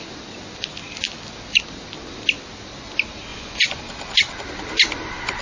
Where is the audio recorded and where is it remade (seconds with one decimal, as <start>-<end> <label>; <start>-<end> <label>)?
0.0-3.3 recorded; 3.3-3.8 remade; 3.8-5.4 recorded

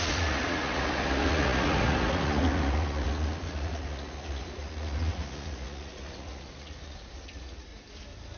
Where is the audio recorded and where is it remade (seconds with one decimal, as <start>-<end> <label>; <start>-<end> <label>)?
0.0-7.7 remade; 7.7-8.4 recorded

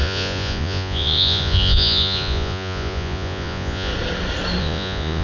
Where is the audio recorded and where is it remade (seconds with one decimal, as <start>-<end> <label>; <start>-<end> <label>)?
0.0-3.9 remade; 3.9-4.6 recorded; 4.6-5.2 remade

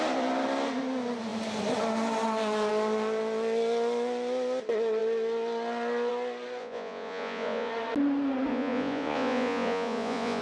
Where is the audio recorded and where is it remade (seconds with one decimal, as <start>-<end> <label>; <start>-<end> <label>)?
0.0-6.6 recorded; 6.6-7.7 remade; 7.7-8.5 recorded; 8.5-10.4 remade

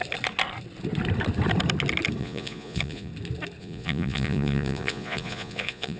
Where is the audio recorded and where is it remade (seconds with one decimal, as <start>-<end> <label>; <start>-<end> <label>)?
0.0-2.2 recorded; 2.2-3.1 remade; 3.1-3.6 recorded; 3.6-6.0 remade

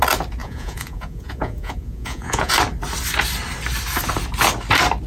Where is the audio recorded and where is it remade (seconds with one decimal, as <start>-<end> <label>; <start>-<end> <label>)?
0.0-0.4 recorded; 0.4-2.5 remade; 2.5-5.1 recorded